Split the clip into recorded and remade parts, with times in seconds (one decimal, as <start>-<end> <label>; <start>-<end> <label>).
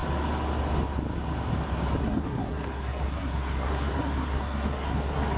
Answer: 0.0-2.0 recorded; 2.0-5.4 remade